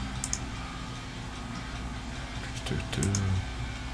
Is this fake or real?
real